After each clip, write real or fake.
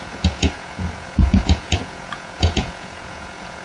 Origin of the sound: fake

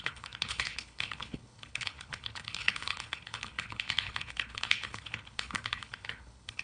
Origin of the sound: fake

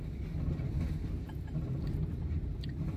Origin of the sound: real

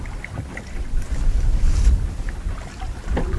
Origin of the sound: real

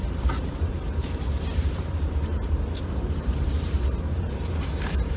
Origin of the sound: fake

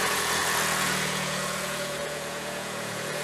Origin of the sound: fake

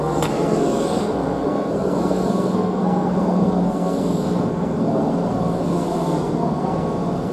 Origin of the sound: fake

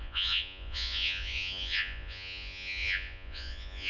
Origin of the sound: fake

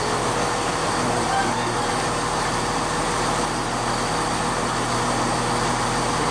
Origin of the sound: real